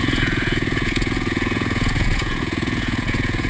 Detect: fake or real fake